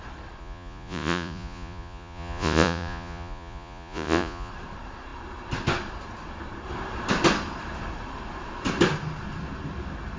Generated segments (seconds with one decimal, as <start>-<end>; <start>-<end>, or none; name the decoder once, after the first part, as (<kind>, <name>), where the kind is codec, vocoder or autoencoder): 0.4-4.5 (vocoder, Vocos)

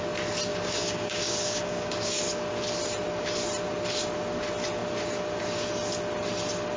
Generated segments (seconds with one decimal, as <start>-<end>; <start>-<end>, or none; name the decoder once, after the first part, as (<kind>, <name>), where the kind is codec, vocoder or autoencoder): 0.5-2.2 (codec, DAC)